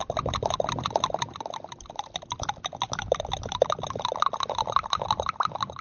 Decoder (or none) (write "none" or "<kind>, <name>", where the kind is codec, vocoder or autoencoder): none